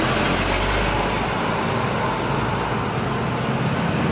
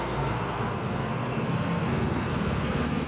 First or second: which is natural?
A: first